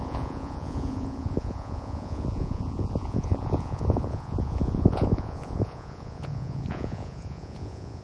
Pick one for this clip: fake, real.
fake